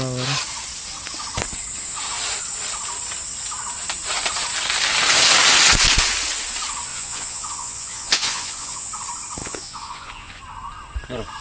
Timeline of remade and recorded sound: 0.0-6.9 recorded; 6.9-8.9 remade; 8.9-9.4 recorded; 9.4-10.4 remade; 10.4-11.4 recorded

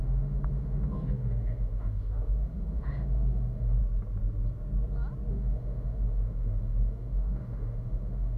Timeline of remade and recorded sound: 0.0-3.8 remade; 3.8-5.3 recorded; 5.3-8.4 remade

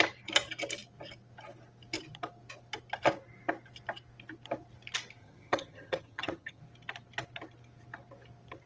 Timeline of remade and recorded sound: 0.0-5.2 recorded; 5.2-6.6 remade; 6.6-8.7 recorded

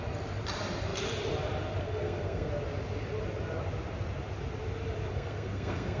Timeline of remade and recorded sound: 0.0-1.8 recorded; 1.8-2.5 remade; 2.5-5.1 recorded; 5.1-6.0 remade

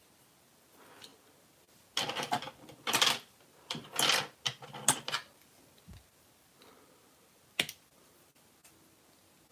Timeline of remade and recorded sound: 0.0-9.5 recorded